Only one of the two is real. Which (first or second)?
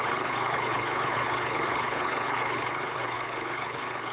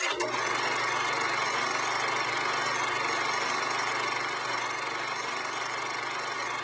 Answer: second